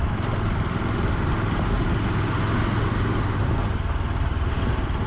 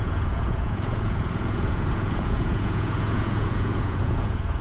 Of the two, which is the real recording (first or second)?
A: first